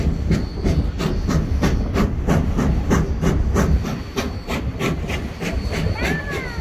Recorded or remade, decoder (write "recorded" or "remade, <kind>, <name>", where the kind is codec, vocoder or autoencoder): recorded